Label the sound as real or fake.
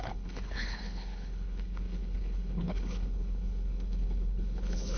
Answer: fake